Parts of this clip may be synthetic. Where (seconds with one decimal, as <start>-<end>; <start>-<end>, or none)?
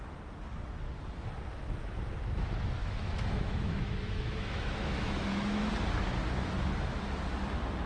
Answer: 2.8-5.7